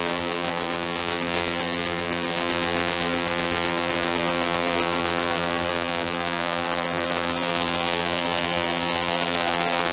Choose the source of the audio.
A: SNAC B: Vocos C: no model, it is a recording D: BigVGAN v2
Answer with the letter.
D